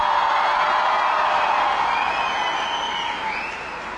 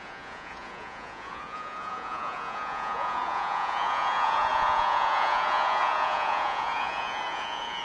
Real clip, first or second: first